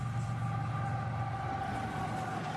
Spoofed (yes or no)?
no